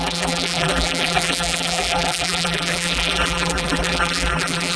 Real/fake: fake